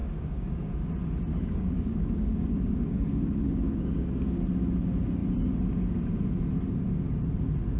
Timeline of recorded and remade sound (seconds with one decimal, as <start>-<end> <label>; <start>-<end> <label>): 0.0-0.9 remade; 0.9-1.3 recorded; 1.3-4.4 remade; 4.4-7.8 recorded